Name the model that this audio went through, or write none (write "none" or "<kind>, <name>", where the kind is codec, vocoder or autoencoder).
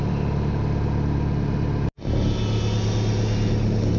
none